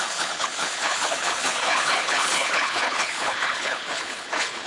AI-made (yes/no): yes